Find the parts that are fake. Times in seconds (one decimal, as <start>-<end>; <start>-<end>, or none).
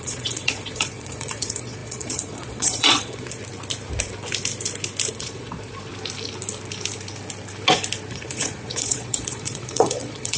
0.0-3.4; 5.1-5.9; 8.1-10.4